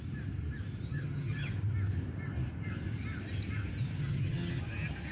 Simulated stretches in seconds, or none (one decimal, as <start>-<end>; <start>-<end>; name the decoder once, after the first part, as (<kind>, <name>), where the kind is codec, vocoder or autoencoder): 0.9-1.5 (vocoder, HiFi-GAN); 4.0-4.6